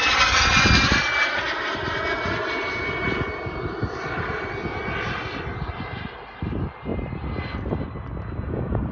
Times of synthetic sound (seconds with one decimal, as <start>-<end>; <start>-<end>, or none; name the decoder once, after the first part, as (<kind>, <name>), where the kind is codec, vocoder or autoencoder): none